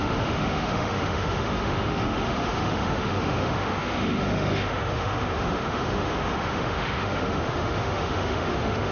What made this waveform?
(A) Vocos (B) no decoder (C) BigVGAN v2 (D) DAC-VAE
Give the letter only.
D